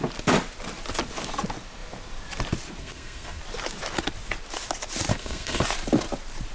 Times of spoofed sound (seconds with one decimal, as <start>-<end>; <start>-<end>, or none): 2.8-3.4; 5.1-5.6